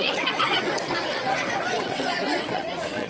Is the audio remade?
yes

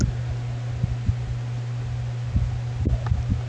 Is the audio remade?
no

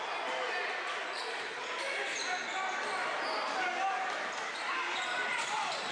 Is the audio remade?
no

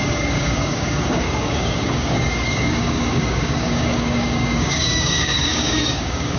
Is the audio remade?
yes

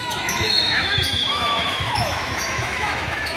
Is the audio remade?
yes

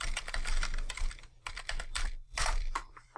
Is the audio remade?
yes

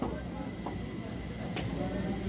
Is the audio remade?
no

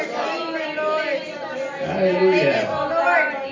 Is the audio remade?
no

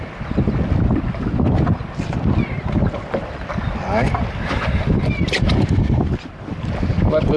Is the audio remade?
no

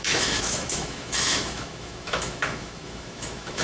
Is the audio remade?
yes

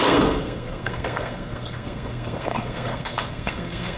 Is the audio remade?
yes